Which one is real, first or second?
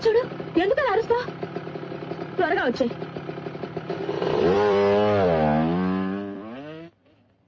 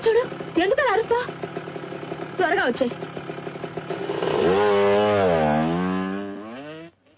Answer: second